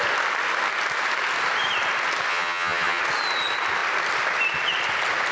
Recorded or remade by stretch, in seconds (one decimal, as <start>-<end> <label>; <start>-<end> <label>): 0.0-2.3 recorded; 2.3-3.0 remade; 3.0-5.3 recorded